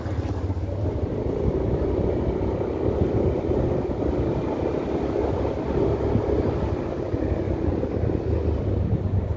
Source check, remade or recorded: recorded